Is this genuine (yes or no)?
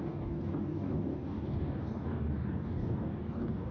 no